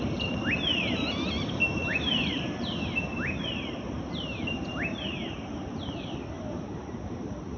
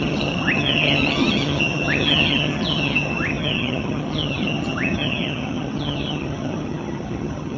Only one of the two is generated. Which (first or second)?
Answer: second